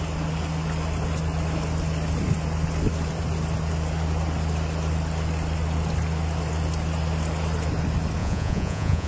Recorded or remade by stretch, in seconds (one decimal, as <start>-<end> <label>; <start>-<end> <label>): 0.0-8.2 recorded; 8.2-9.1 remade